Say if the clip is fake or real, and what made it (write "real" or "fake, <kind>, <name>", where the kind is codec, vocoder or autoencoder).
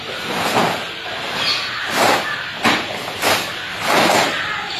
real